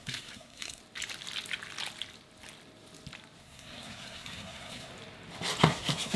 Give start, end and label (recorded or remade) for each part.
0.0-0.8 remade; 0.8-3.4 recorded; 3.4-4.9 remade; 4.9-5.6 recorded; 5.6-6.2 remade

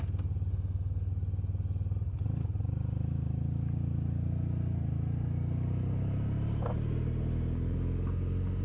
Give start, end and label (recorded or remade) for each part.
0.0-0.5 recorded; 0.5-1.1 remade; 1.1-8.6 recorded

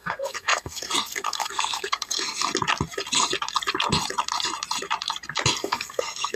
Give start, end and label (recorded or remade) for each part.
0.0-2.4 remade; 2.4-5.6 recorded; 5.6-6.4 remade